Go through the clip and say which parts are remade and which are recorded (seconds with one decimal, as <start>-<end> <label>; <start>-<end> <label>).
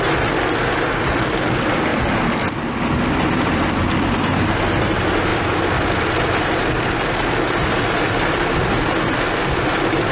0.0-10.1 recorded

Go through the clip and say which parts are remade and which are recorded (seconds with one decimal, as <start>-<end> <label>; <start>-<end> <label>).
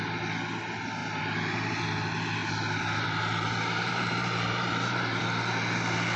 0.0-1.0 recorded; 1.0-1.8 remade; 1.8-2.4 recorded; 2.4-5.2 remade; 5.2-6.2 recorded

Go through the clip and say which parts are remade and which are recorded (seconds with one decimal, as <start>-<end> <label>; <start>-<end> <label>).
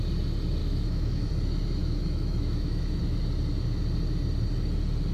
0.0-0.6 recorded; 0.6-1.3 remade; 1.3-1.8 recorded; 1.8-3.0 remade; 3.0-5.1 recorded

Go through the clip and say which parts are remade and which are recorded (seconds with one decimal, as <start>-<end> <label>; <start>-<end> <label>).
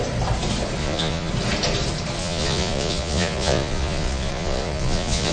0.0-0.8 recorded; 0.8-1.3 remade; 1.3-2.2 recorded; 2.2-5.3 remade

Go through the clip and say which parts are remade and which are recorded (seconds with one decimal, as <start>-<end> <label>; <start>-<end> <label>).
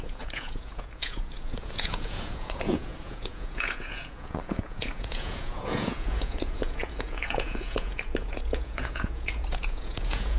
0.0-10.4 remade